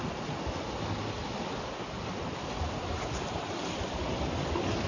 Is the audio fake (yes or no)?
no